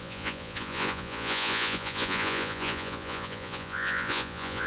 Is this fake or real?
fake